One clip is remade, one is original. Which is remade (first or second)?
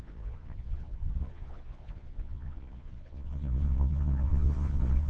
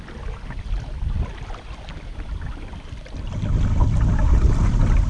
first